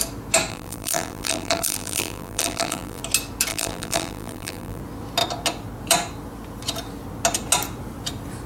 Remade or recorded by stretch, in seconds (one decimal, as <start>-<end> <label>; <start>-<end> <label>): 0.0-0.5 recorded; 0.5-3.0 remade; 3.0-3.5 recorded; 3.5-4.8 remade; 4.8-8.5 recorded